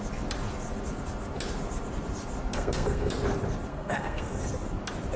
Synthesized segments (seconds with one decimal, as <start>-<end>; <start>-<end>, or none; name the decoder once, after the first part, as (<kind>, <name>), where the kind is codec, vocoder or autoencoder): 2.5-3.1 (codec, SNAC); 3.7-4.4